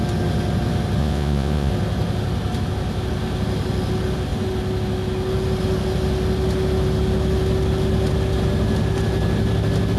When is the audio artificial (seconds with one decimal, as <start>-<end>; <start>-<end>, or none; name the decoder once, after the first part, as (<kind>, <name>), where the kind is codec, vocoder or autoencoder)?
1.0-1.7 (vocoder, Vocos)